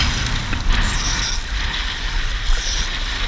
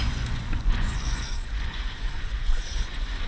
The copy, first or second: second